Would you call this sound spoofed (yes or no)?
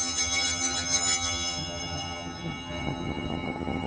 yes